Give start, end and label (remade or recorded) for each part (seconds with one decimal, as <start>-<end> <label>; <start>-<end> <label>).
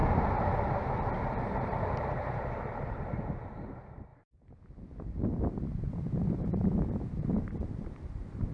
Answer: 0.0-1.4 recorded; 1.4-4.1 remade; 4.1-6.3 recorded; 6.3-8.5 remade